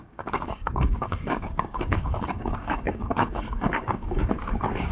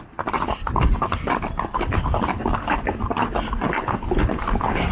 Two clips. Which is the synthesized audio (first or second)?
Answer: first